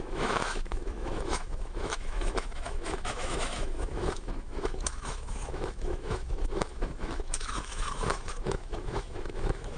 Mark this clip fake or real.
fake